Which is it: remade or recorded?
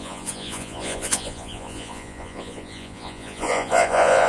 remade